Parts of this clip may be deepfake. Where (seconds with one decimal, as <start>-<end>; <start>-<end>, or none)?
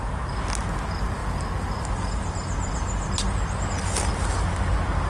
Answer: none